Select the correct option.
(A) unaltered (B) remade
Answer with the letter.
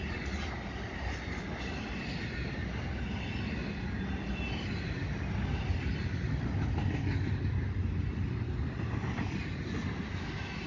A